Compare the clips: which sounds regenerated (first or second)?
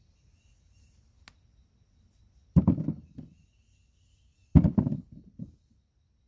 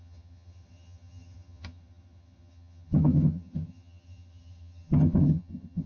second